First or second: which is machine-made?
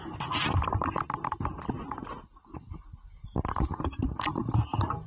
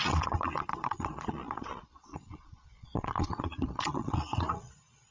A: second